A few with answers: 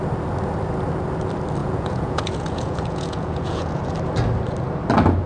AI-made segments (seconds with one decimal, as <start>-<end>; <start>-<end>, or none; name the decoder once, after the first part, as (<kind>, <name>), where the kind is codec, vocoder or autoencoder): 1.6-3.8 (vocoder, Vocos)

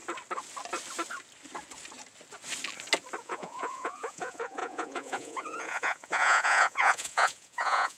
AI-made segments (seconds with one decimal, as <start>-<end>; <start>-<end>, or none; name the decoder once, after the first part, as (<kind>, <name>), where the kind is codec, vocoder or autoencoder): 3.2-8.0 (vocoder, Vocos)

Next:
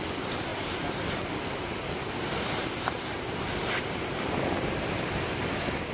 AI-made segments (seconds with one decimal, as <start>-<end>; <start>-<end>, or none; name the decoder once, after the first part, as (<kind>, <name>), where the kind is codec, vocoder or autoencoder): none

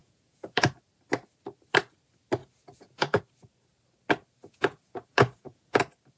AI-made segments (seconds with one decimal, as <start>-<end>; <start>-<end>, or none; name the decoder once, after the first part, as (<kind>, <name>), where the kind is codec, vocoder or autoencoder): 0.0-0.7 (vocoder, Vocos); 2.4-3.2; 4.4-5.8

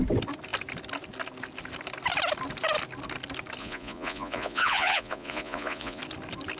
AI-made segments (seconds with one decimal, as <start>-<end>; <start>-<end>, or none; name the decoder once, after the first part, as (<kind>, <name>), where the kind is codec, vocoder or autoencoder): 3.6-6.0 (vocoder, Vocos)

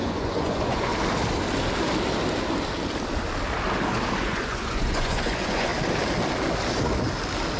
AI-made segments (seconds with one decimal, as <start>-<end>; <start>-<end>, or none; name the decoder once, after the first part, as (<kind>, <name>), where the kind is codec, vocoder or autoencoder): 0.0-0.9 (vocoder, Vocos); 4.2-5.7